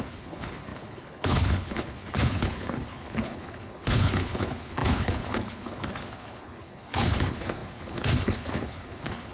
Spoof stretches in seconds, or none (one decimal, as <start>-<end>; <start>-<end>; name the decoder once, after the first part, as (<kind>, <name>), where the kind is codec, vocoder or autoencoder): 0.0-9.3 (codec, HILCodec)